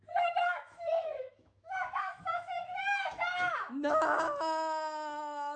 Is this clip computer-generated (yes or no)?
yes